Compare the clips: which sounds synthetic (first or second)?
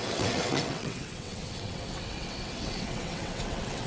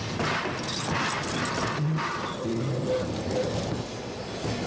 first